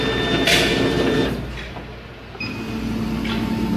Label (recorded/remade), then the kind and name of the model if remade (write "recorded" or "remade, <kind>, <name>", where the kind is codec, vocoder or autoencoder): recorded